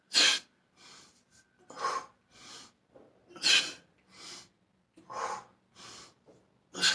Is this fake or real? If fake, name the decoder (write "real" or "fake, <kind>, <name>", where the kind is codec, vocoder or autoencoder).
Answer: real